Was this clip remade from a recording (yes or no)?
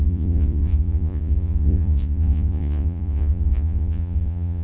yes